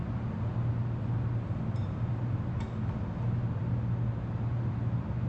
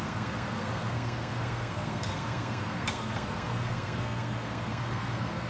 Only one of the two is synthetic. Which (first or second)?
second